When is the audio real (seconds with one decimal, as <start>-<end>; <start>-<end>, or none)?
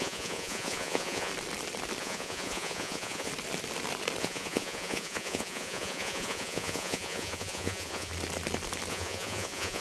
1.3-2.0; 3.3-4.2; 8.1-8.9